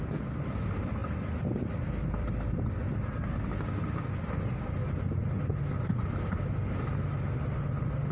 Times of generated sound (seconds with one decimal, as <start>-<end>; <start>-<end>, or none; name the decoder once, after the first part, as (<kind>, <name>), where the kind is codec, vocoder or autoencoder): none